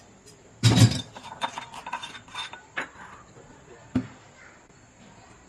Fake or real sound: fake